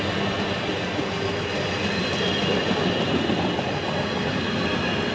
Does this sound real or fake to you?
real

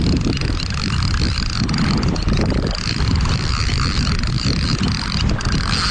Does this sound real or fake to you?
real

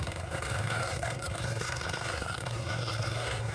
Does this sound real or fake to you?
fake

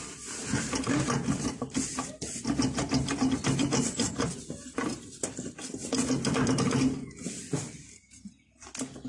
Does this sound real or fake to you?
real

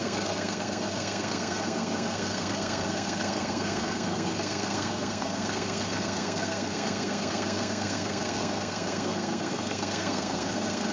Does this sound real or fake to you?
fake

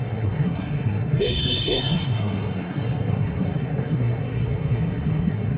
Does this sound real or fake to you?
fake